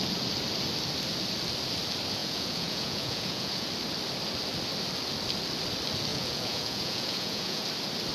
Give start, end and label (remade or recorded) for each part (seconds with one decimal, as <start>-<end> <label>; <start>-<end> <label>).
0.0-2.2 recorded; 2.2-3.7 remade; 3.7-6.1 recorded; 6.1-7.6 remade; 7.6-8.1 recorded